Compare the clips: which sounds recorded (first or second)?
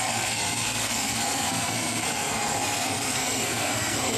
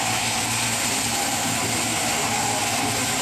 second